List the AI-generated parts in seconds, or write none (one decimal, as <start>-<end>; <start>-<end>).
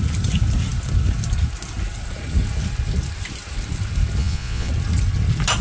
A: 4.2-4.7